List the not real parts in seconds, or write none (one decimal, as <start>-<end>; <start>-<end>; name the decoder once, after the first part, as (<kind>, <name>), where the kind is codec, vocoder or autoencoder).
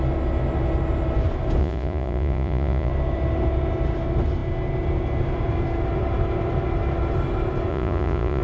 1.6-2.9 (vocoder, Vocos); 7.7-8.4